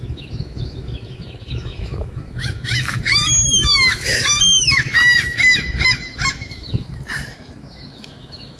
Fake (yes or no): yes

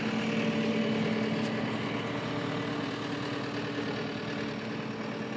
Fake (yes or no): no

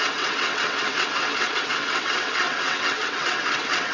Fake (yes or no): yes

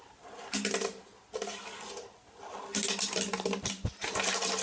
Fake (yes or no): no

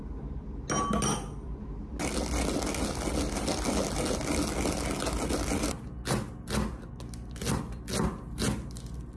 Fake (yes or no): no